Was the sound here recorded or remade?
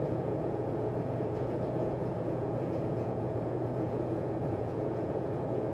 remade